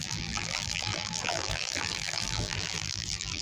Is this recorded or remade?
remade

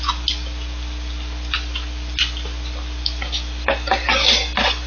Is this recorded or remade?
recorded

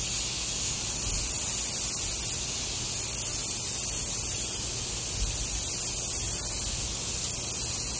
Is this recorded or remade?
recorded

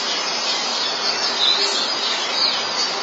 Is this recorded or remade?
recorded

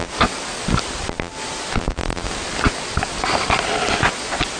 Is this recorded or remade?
recorded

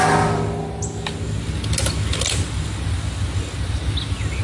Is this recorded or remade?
recorded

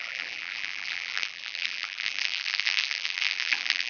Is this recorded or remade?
remade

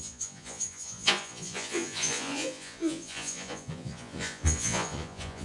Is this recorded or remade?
remade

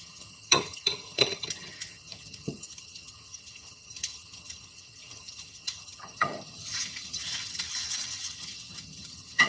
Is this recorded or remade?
remade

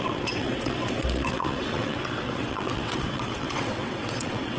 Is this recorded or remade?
remade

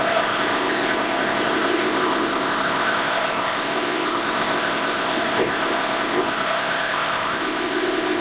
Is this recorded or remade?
remade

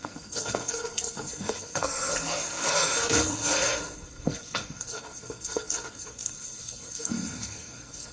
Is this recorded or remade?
remade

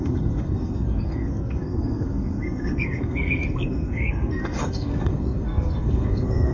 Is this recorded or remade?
remade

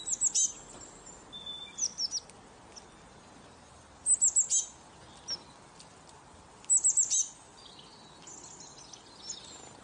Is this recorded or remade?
recorded